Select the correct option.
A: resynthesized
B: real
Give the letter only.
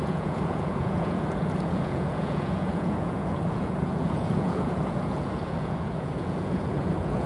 A